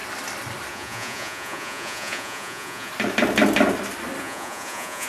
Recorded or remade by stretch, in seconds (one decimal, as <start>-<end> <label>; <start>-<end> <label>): 0.0-0.7 recorded; 0.7-2.9 remade; 2.9-4.2 recorded; 4.2-5.1 remade